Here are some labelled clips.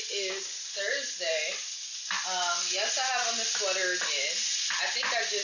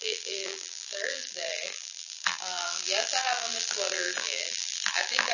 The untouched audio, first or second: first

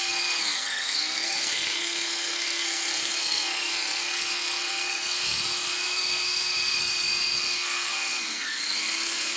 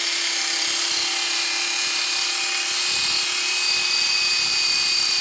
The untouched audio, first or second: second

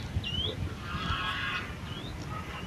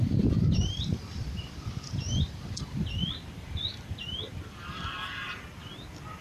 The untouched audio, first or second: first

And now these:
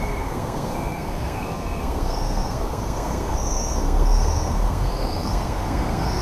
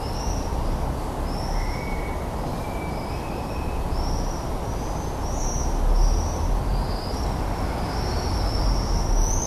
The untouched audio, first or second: second